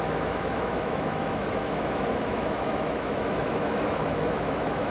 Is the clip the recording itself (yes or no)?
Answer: no